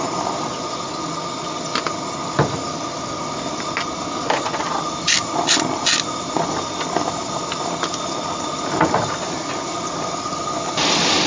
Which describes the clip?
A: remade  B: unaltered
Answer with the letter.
B